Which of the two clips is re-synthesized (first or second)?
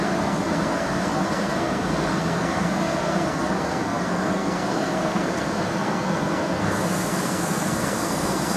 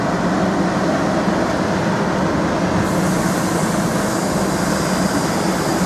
first